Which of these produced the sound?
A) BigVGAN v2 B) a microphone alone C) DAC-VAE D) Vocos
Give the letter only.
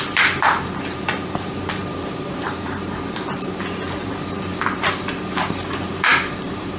A